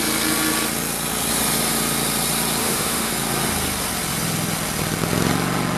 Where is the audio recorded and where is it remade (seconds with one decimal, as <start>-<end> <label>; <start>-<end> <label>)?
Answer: 0.0-2.6 recorded; 2.6-3.1 remade; 3.1-5.8 recorded